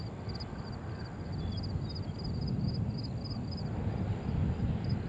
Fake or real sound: real